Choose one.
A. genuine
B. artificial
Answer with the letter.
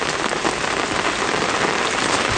A